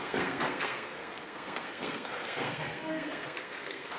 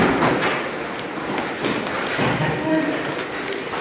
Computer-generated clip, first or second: first